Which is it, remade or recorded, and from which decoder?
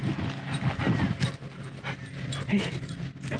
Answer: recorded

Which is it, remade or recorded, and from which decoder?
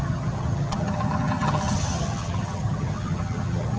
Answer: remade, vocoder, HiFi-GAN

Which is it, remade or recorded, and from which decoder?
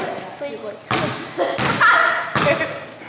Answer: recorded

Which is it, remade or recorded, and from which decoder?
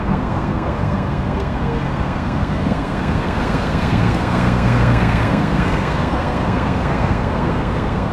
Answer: remade, codec, SNAC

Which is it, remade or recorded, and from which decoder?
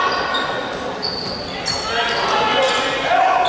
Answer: recorded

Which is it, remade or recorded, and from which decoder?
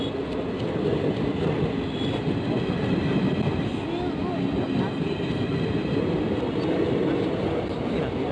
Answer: recorded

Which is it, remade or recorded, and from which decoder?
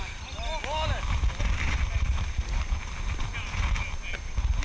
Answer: recorded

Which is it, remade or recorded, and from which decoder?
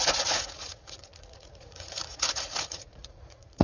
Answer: remade, vocoder, Vocos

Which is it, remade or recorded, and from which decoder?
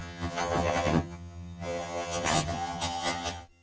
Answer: remade, vocoder, HiFi-GAN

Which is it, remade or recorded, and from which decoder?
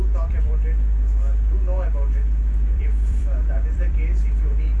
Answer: remade, vocoder, BigVGAN v2